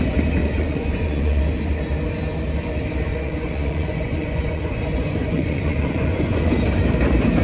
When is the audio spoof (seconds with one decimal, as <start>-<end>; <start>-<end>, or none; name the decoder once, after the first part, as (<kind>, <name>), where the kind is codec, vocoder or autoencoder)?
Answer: 0.4-1.4 (vocoder, Vocos); 3.1-6.5